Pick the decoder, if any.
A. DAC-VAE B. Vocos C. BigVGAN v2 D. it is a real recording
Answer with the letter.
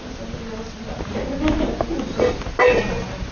D